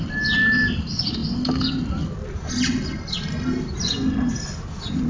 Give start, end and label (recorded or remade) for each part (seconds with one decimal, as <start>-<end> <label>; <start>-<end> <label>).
0.0-5.1 recorded